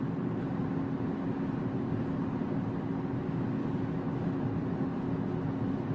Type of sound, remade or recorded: recorded